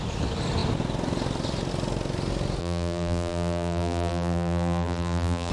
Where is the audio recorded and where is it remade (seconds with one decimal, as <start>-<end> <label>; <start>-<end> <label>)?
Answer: 0.0-2.6 recorded; 2.6-5.5 remade